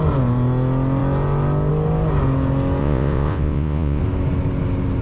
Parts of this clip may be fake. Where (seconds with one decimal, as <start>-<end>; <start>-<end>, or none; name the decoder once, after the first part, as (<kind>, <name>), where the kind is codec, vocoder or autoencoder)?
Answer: 2.8-4.0 (vocoder, Vocos)